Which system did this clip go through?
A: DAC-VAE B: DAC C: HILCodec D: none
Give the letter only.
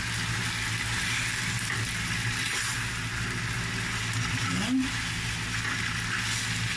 D